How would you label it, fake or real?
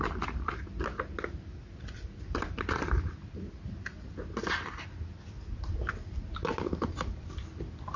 real